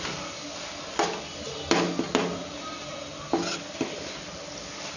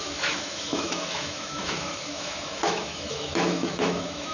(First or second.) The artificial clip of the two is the second